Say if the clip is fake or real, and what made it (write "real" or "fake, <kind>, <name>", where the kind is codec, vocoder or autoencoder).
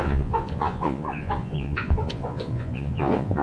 fake, vocoder, Vocos